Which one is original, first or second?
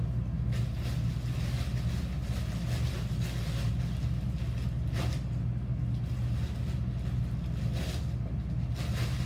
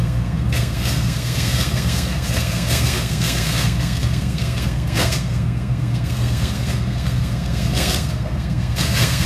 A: first